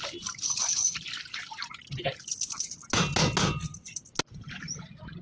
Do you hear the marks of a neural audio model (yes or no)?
no